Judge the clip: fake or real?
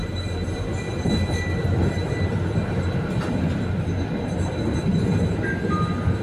real